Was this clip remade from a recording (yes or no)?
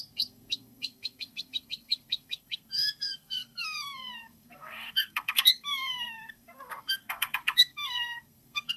yes